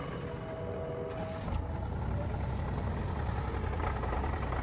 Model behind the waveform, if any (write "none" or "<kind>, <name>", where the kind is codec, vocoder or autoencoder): none